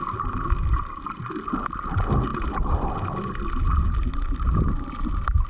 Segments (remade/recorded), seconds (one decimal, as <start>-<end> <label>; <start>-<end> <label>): 0.0-5.5 recorded